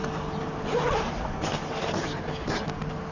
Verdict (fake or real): real